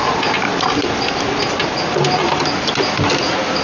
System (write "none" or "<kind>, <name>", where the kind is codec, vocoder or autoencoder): none